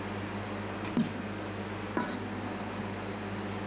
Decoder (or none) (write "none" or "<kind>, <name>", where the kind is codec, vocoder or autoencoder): none